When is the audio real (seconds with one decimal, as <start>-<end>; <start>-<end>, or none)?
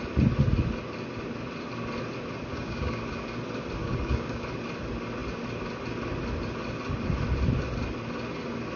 0.0-2.5; 3.0-3.8; 4.4-8.8